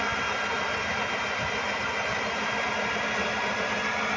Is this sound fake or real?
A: real